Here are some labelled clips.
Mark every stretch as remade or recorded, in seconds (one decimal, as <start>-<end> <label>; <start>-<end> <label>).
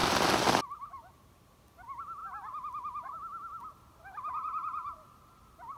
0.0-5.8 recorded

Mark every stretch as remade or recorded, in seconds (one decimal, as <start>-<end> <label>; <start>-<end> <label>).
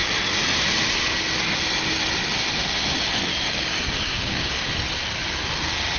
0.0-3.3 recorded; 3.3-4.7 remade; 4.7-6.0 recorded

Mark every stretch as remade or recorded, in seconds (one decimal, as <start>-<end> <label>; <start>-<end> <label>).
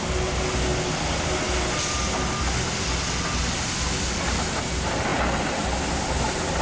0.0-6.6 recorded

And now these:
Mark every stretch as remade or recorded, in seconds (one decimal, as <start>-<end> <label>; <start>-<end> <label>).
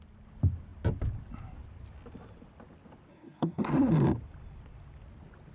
0.0-3.1 recorded; 3.1-3.9 remade; 3.9-5.5 recorded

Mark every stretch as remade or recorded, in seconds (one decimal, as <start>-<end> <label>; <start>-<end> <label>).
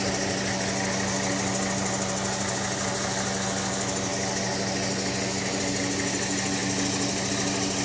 0.0-7.8 recorded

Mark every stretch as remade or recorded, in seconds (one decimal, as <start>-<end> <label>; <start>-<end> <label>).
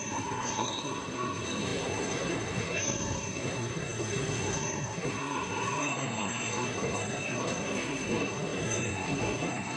0.0-9.8 remade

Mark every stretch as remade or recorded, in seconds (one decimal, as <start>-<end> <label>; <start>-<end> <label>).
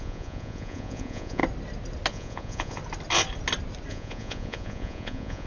0.0-1.4 remade; 1.4-2.1 recorded; 2.1-2.8 remade; 2.8-3.9 recorded; 3.9-5.5 remade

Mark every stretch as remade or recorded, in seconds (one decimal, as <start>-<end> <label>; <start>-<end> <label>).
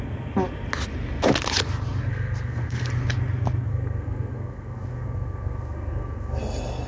0.0-2.1 recorded; 2.1-2.9 remade; 2.9-3.7 recorded; 3.7-6.4 remade; 6.4-6.9 recorded